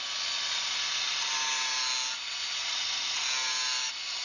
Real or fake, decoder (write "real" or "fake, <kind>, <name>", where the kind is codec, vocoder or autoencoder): real